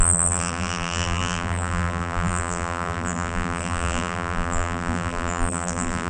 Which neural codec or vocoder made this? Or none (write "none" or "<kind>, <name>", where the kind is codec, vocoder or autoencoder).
vocoder, BigVGAN v2